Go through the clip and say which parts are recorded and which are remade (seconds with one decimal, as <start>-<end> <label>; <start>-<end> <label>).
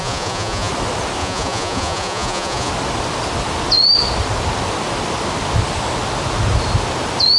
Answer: 0.0-0.7 remade; 0.7-1.2 recorded; 1.2-2.7 remade; 2.7-7.4 recorded